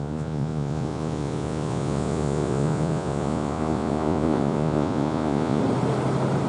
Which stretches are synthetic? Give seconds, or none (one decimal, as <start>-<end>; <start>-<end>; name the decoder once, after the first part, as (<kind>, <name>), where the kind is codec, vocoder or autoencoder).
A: 0.0-5.6 (vocoder, Vocos)